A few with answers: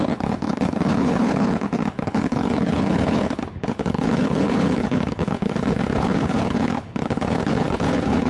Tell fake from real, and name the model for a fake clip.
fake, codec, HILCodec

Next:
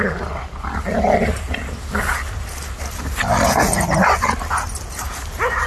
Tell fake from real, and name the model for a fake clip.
real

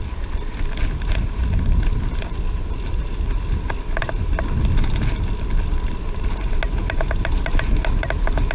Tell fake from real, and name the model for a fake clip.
real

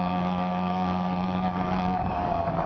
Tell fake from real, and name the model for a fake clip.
fake, codec, DAC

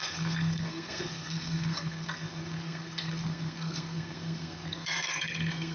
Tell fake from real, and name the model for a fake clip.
fake, codec, SNAC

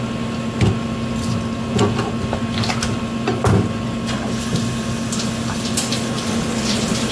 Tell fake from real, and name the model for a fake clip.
real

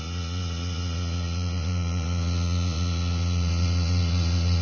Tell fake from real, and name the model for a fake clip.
fake, vocoder, Vocos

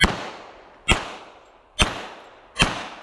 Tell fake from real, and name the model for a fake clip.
real